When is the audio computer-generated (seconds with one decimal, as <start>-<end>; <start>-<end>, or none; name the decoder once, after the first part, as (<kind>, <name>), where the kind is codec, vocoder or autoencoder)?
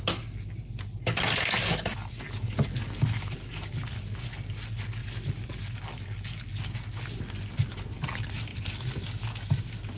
none